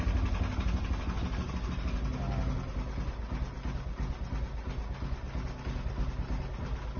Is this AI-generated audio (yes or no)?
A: no